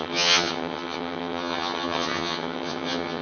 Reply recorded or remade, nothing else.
remade